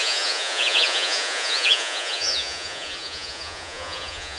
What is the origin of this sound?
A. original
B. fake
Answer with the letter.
B